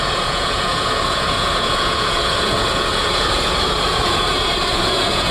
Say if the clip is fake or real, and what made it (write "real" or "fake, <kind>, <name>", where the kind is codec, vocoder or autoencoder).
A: fake, vocoder, Vocos